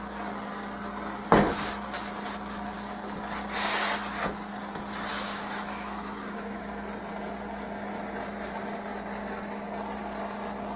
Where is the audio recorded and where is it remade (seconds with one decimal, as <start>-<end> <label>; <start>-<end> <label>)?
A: 0.0-5.1 recorded; 5.1-6.6 remade; 6.6-10.8 recorded